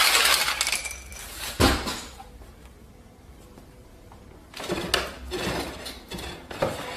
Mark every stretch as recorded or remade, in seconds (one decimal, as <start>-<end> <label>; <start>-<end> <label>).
0.0-7.0 recorded